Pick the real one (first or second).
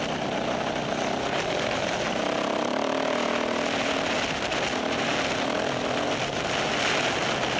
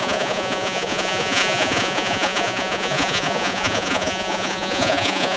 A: first